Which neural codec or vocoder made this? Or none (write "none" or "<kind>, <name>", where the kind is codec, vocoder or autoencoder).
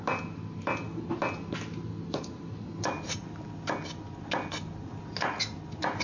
none